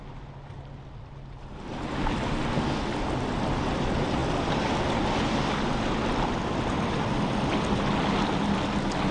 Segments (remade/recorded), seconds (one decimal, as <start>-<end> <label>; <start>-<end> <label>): 0.0-9.1 recorded